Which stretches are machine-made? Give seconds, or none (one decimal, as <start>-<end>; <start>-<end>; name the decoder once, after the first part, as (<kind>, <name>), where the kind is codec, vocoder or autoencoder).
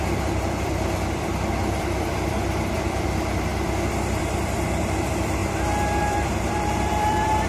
0.0-7.5 (vocoder, BigVGAN v2)